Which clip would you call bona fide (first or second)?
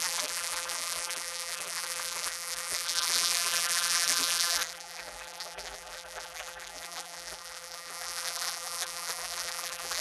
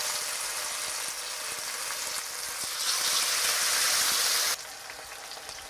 second